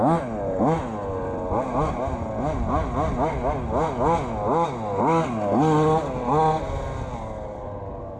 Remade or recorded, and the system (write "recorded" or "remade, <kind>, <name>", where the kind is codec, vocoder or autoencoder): recorded